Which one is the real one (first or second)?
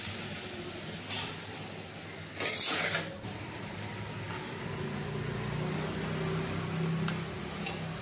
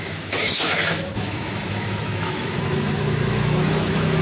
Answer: first